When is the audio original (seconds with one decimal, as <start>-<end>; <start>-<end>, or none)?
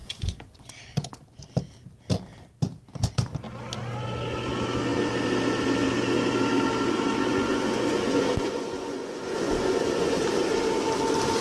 1.4-7.3; 10.2-11.4